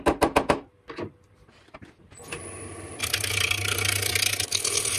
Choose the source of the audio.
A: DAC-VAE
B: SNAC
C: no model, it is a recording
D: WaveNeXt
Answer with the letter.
C